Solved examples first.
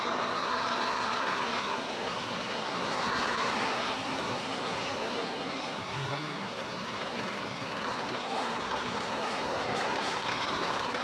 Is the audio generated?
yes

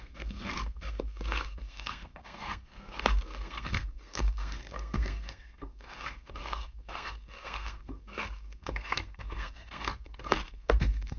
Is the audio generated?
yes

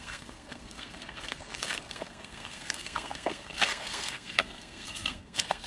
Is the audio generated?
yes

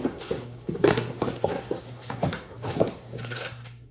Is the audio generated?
yes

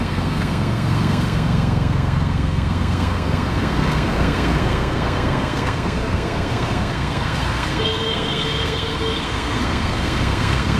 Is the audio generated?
yes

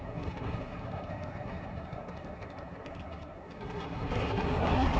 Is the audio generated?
yes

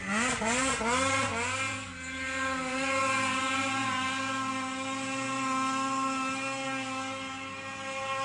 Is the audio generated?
no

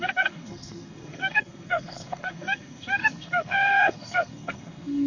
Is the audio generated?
yes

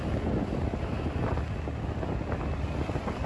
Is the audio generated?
no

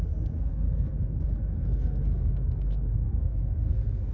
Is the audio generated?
yes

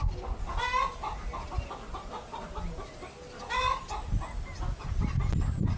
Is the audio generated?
no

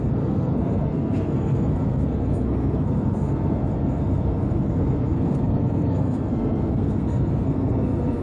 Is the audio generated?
yes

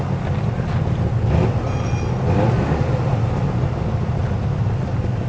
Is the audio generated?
no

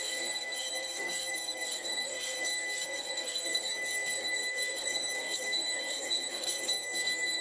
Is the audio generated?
yes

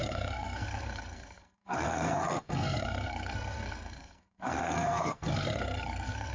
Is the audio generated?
yes